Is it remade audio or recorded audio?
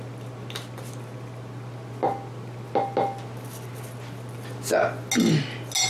recorded